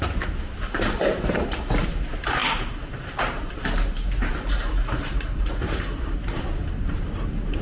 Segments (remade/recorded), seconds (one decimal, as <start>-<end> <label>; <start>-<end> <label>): 0.0-7.6 remade